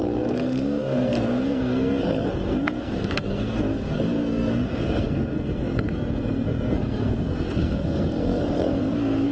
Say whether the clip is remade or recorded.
remade